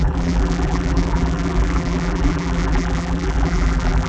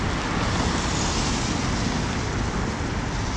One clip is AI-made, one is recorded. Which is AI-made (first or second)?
first